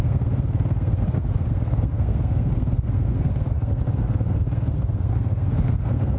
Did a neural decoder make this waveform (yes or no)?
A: yes